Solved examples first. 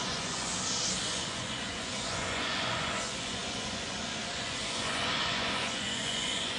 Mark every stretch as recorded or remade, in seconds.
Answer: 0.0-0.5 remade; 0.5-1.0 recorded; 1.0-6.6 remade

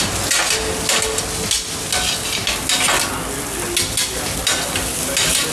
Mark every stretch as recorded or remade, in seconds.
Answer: 0.0-5.5 recorded

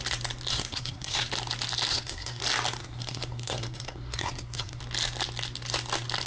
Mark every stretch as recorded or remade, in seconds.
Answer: 0.0-0.5 recorded; 0.5-1.3 remade; 1.3-1.9 recorded; 1.9-2.4 remade; 2.4-2.8 recorded; 2.8-4.8 remade; 4.8-6.3 recorded

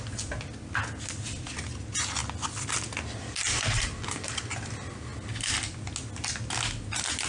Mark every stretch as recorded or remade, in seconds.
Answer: 0.0-7.3 recorded

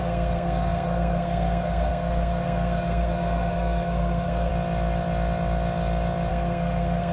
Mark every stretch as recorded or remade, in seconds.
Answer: 0.0-4.5 remade; 4.5-6.3 recorded; 6.3-7.1 remade

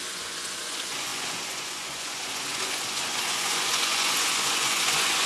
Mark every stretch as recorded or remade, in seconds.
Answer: 0.0-5.3 remade